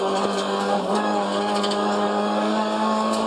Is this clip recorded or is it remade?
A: remade